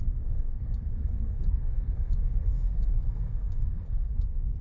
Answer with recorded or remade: remade